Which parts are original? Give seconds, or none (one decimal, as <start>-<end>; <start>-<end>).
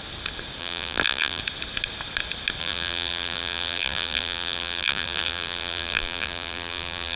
0.0-0.6; 1.4-2.6